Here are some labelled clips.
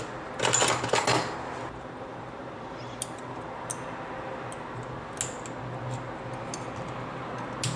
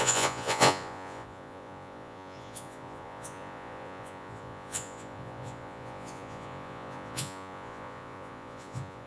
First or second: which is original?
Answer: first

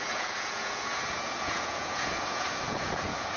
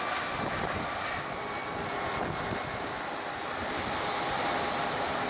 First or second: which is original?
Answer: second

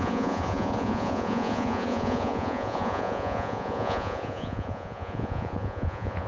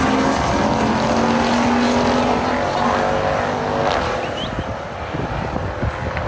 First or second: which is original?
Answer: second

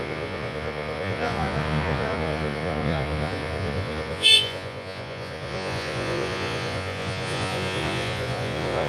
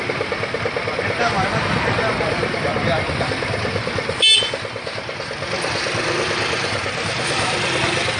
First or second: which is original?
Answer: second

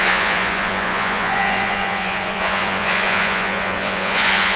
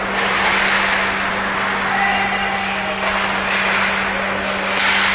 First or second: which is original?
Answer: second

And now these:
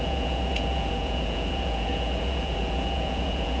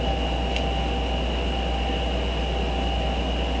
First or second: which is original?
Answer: second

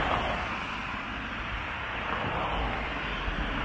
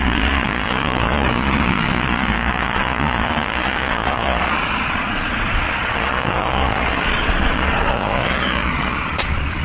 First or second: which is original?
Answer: first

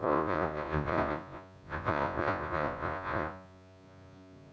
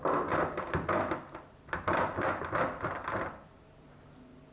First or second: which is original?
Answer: second